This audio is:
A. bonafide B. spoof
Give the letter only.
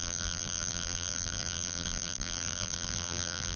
B